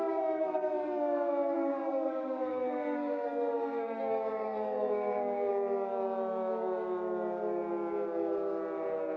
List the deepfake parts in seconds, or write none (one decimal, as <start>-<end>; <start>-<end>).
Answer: 0.0-5.5